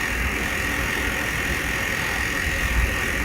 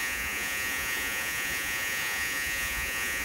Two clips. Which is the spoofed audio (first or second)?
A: second